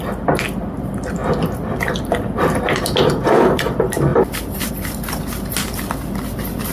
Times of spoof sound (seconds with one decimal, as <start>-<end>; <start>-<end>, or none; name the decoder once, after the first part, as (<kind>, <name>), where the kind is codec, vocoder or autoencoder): 0.0-6.7 (vocoder, BigVGAN v2)